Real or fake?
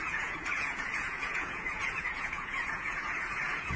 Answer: fake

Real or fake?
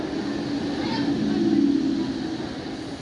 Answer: real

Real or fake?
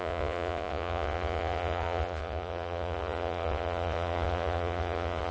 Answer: fake